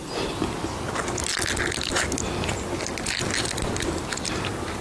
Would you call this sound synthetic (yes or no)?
no